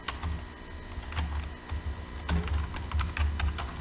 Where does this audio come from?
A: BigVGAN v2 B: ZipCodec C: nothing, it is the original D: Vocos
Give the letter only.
C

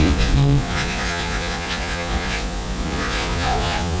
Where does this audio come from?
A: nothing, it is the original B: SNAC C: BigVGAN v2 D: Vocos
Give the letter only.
D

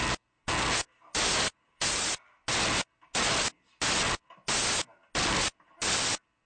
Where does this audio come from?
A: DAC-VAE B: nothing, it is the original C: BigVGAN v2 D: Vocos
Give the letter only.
B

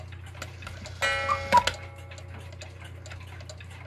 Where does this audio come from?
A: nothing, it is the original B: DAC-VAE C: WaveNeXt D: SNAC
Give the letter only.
A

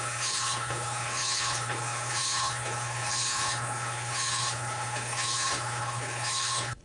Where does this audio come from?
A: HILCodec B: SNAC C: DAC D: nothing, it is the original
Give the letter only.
A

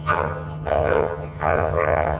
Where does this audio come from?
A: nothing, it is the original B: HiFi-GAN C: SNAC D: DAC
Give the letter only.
B